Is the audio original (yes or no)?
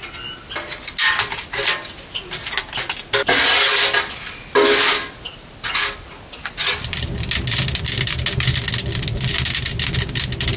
yes